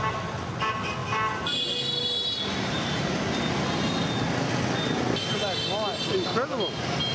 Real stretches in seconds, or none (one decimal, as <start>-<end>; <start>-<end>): 0.0-7.1